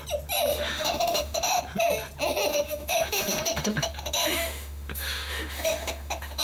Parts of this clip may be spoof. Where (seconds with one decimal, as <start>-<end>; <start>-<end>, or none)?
0.5-1.6; 2.5-6.4